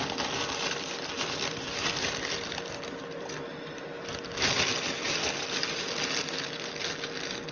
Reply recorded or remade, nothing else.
recorded